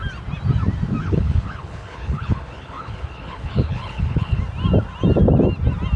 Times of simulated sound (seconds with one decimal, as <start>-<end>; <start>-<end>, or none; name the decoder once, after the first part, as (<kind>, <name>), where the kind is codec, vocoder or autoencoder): 1.0-4.4 (codec, HILCodec)